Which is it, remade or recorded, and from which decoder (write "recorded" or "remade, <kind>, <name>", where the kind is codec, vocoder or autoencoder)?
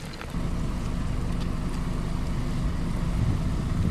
recorded